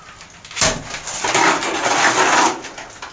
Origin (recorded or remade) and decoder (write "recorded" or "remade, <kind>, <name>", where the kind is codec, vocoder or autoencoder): recorded